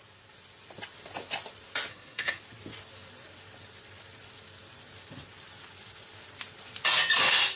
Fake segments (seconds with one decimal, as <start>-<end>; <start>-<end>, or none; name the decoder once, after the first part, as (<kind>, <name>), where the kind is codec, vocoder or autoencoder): 1.9-2.4 (codec, SNAC)